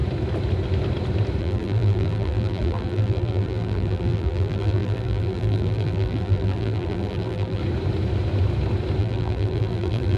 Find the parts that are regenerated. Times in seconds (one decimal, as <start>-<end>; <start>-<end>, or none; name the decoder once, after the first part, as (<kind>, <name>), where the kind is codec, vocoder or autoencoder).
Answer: 1.4-7.6 (vocoder, BigVGAN v2); 9.0-10.2